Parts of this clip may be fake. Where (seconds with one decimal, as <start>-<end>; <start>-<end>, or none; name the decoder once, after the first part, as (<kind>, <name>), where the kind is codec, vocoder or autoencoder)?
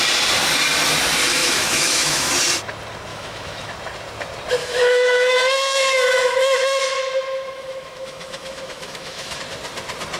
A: 1.4-2.3 (autoencoder, DAC-VAE); 3.1-3.7; 4.6-9.4